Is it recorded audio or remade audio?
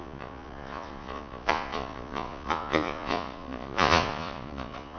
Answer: remade